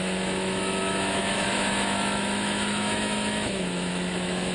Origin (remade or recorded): remade